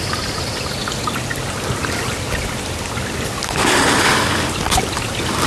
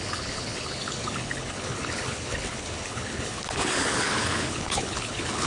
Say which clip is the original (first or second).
first